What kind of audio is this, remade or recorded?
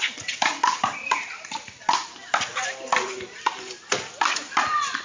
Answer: recorded